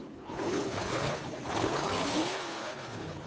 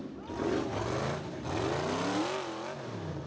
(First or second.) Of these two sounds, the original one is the second